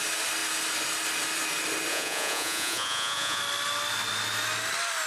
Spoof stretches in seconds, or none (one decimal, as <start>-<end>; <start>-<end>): 1.9-3.4